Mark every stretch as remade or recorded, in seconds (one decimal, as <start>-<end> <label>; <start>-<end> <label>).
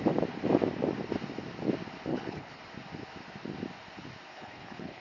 0.0-2.1 recorded; 2.1-2.6 remade; 2.6-4.3 recorded; 4.3-5.0 remade